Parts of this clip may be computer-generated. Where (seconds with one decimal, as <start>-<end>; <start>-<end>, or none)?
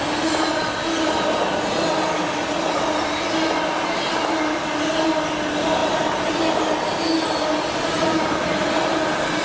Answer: none